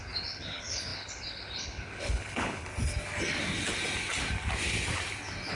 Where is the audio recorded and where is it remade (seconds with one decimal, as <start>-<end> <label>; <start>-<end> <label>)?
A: 0.0-2.7 remade; 2.7-5.5 recorded